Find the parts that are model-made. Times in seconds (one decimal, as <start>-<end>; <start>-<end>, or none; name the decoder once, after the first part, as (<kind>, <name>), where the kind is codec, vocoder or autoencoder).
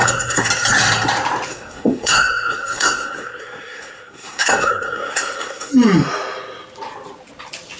0.0-0.5 (codec, SNAC); 1.5-5.7